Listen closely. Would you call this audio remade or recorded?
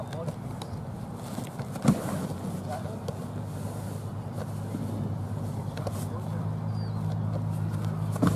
recorded